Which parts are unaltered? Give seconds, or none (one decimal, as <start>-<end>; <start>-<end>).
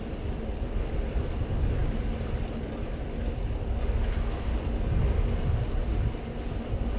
0.0-7.0